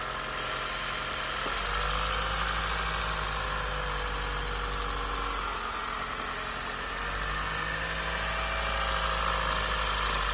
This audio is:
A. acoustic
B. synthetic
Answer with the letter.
A